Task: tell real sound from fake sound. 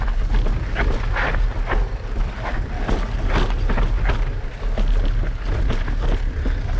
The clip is real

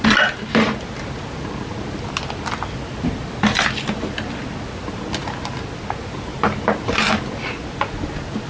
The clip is real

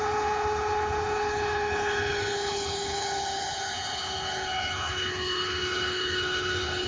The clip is fake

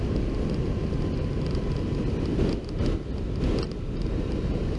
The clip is real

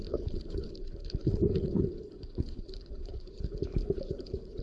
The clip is fake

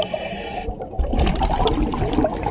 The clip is real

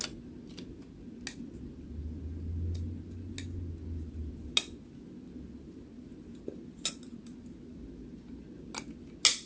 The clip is real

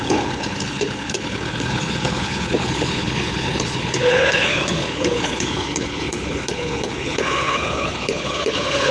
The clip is fake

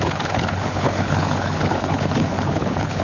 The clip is fake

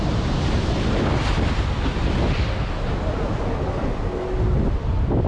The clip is real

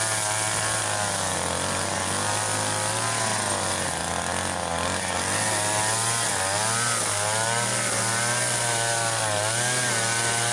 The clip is real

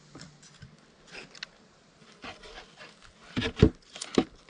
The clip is real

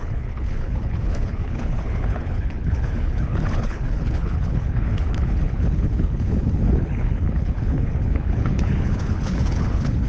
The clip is fake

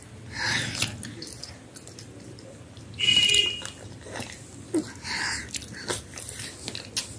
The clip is real